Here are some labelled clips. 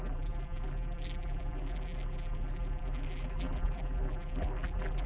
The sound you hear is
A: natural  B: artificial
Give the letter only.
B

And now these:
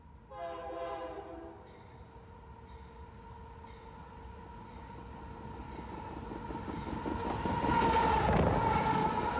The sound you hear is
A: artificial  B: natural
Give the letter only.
B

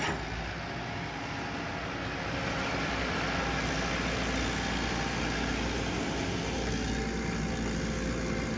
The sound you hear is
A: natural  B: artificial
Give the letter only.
A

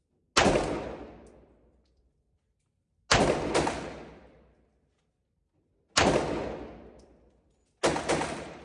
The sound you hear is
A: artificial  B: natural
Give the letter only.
B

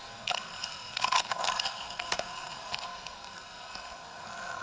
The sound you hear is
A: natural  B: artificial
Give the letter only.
B